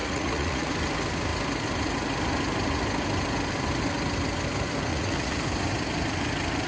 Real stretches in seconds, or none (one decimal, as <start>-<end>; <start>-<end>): 0.7-4.9; 5.4-6.7